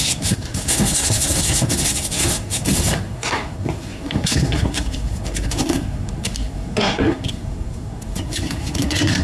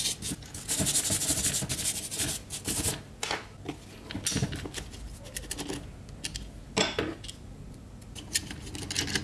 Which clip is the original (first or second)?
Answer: second